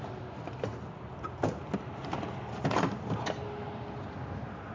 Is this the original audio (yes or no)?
yes